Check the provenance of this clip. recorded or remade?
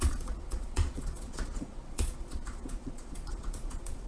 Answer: remade